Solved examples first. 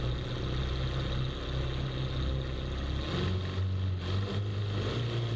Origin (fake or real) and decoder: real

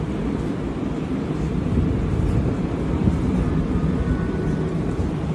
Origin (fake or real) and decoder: real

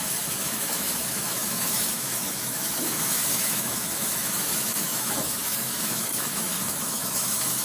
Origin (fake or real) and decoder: fake, autoencoder, DAC-VAE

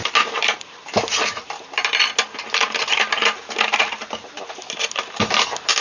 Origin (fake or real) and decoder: real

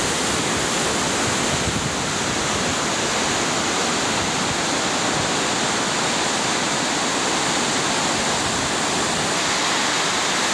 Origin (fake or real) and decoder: real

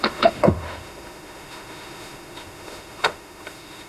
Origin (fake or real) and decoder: fake, autoencoder, DAC-VAE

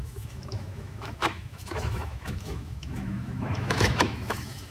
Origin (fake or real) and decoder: fake, autoencoder, DAC-VAE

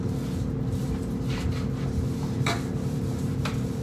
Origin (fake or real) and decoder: real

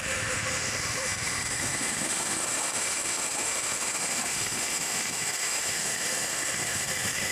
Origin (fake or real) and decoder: fake, autoencoder, DAC-VAE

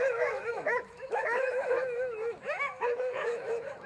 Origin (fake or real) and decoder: fake, autoencoder, DAC-VAE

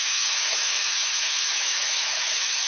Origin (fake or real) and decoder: fake, autoencoder, DAC-VAE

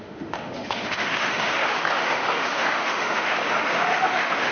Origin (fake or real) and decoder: fake, autoencoder, DAC-VAE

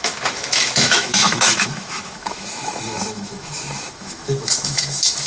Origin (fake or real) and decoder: fake, autoencoder, DAC-VAE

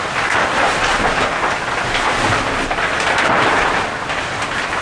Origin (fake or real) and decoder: real